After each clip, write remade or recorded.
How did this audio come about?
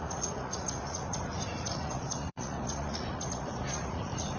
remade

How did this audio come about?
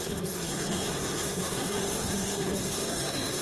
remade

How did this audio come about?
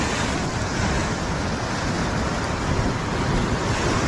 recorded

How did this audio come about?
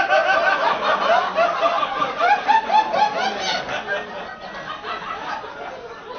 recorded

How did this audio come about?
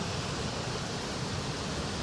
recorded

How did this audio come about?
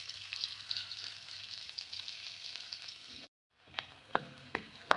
remade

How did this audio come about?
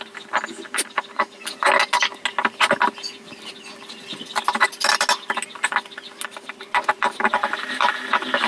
recorded